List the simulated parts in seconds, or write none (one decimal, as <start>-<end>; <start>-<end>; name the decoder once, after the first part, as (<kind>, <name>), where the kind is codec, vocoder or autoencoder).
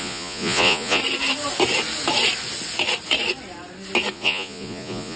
0.0-1.0 (vocoder, Vocos); 4.1-5.2